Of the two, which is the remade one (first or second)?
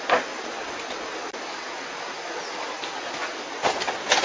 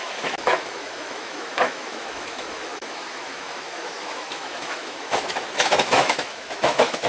second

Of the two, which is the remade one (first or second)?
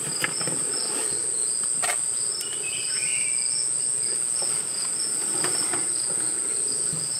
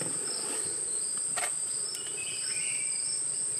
second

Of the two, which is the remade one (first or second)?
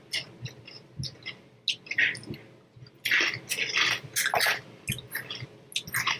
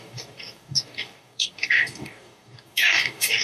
second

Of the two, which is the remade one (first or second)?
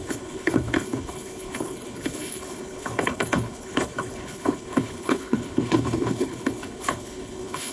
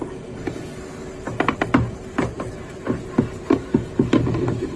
first